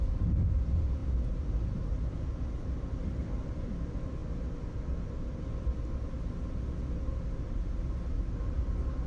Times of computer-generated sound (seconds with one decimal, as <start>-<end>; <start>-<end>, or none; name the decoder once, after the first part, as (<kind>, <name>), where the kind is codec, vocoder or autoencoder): none